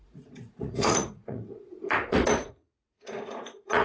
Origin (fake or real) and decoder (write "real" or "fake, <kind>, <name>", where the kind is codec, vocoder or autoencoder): fake, vocoder, Vocos